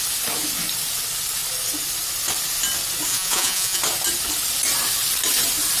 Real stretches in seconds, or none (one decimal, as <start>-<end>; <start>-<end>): 0.0-3.1; 3.8-5.8